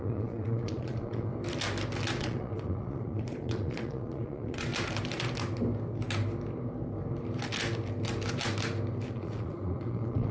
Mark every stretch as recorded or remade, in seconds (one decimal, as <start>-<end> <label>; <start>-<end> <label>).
0.0-1.3 remade; 1.3-2.2 recorded; 2.2-4.7 remade; 4.7-9.1 recorded; 9.1-10.3 remade